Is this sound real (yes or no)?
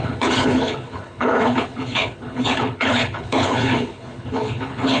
no